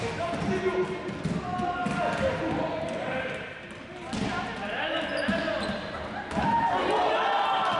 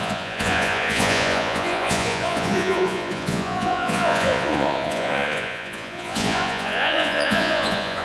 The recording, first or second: first